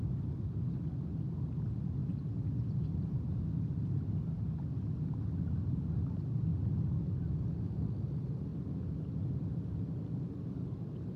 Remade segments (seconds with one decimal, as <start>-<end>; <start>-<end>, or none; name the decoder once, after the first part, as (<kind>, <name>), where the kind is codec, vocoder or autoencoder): none